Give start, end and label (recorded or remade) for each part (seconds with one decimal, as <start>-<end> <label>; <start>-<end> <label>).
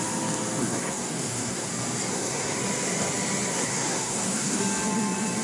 0.0-0.6 recorded; 0.6-1.7 remade; 1.7-2.1 recorded; 2.1-2.6 remade; 2.6-3.5 recorded; 3.5-4.6 remade; 4.6-5.4 recorded